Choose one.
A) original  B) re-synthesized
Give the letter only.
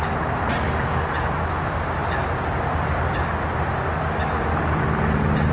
A